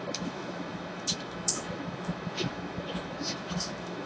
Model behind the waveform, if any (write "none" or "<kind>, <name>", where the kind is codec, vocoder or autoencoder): autoencoder, DAC-VAE